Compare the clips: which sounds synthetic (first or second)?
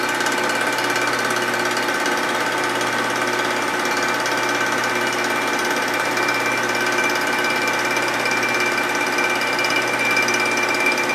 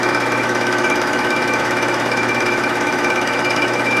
second